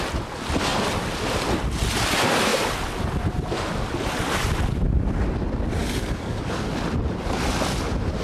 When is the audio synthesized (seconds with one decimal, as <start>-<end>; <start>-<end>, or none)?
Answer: 5.8-6.7

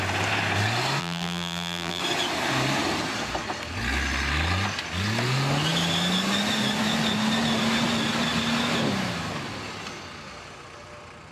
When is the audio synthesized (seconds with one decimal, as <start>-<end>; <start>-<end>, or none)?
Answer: 1.0-2.0

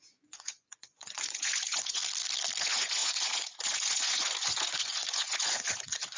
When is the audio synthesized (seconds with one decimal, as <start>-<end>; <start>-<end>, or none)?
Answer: 0.0-2.0; 2.6-6.2

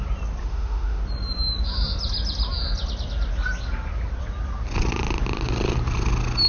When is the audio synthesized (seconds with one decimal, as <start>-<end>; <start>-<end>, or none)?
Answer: 0.4-1.0

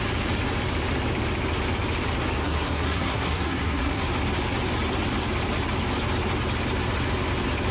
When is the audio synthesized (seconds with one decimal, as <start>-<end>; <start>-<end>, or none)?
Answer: 2.4-4.0

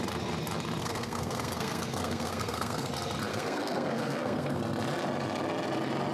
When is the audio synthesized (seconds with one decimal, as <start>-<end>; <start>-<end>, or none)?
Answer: 0.8-2.9; 3.3-4.6

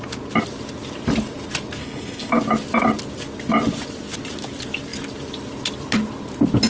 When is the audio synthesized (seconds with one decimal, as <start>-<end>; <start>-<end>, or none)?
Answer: 1.8-2.3

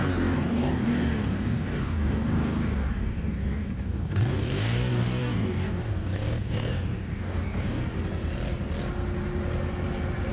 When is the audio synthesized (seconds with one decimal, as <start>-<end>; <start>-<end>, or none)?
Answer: 0.0-7.8